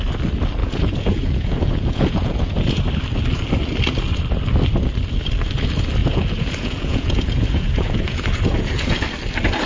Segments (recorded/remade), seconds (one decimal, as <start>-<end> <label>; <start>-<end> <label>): 0.0-0.6 recorded; 0.6-2.8 remade; 2.8-6.0 recorded; 6.0-9.1 remade; 9.1-9.7 recorded